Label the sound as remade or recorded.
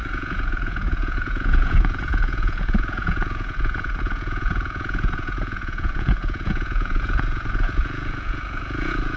remade